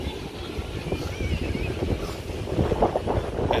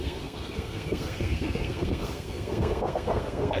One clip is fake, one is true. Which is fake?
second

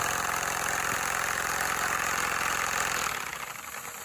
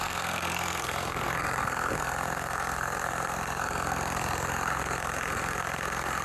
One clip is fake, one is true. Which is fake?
second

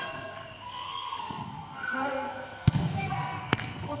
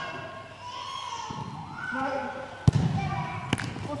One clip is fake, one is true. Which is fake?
first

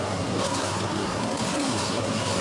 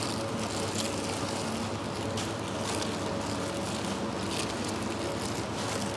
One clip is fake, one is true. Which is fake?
first